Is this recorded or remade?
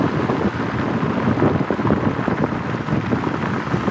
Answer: recorded